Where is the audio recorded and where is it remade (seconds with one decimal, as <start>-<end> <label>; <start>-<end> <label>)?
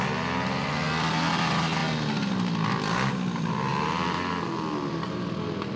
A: 0.0-3.7 recorded; 3.7-4.3 remade; 4.3-5.8 recorded